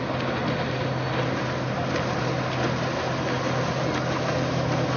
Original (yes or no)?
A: yes